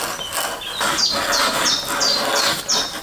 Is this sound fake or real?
real